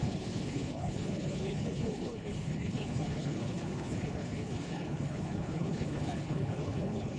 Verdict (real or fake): fake